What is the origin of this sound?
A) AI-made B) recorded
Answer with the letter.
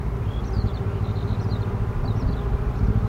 B